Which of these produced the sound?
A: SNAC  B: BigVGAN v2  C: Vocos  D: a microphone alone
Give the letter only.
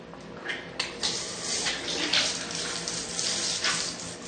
B